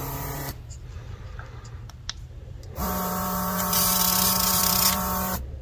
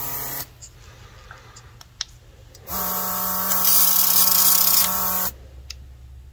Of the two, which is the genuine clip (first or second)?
second